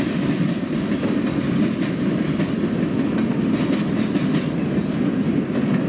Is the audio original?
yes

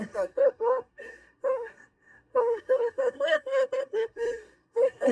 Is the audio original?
no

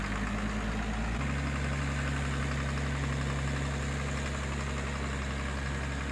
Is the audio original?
yes